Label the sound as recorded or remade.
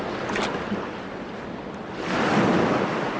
recorded